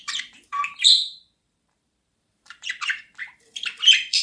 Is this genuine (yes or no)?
no